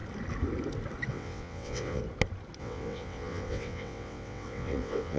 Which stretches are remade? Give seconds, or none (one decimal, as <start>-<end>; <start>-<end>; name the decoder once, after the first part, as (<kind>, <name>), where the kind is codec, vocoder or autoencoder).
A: 1.1-2.0 (vocoder, WaveNeXt); 2.6-5.2